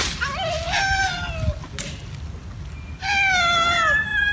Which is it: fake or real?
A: real